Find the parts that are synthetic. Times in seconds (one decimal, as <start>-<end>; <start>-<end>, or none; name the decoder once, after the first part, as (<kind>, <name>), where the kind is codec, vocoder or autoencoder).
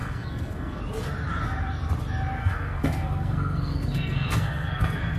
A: 0.0-0.8 (codec, SNAC); 2.4-5.2